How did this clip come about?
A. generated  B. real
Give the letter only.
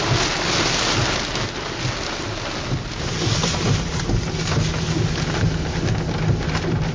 B